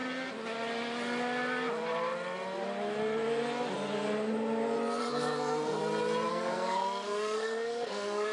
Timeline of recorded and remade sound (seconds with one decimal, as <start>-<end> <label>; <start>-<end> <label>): 0.0-5.0 recorded; 5.0-5.8 remade; 5.8-6.3 recorded; 6.3-8.3 remade